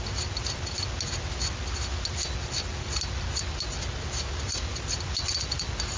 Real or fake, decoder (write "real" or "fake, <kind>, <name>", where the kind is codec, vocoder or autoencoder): real